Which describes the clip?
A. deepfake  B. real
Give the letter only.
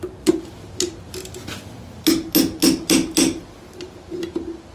B